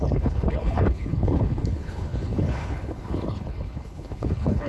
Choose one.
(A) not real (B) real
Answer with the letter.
A